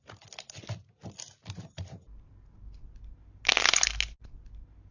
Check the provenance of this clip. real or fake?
real